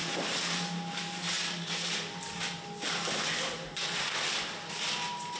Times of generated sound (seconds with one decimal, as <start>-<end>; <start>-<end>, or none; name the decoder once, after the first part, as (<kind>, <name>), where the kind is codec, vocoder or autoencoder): none